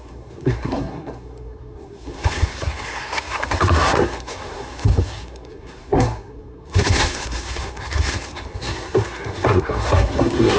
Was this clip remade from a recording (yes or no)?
yes